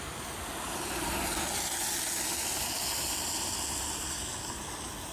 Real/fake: real